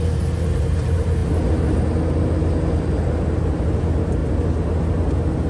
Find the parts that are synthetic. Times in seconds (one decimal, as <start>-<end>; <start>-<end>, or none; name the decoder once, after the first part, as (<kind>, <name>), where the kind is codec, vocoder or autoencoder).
none